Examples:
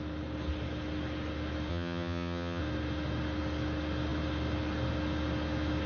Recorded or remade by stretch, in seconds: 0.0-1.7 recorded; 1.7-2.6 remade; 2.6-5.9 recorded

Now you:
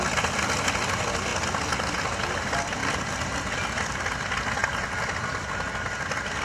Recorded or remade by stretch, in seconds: 0.0-2.8 recorded; 2.8-3.8 remade; 3.8-6.4 recorded

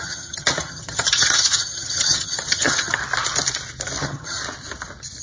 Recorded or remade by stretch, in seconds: 0.0-3.0 remade; 3.0-4.0 recorded; 4.0-4.4 remade; 4.4-5.2 recorded

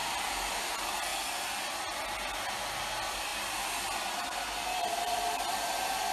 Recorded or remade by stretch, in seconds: 0.0-0.6 remade; 0.6-6.1 recorded